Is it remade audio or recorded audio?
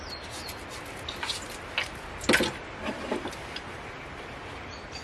recorded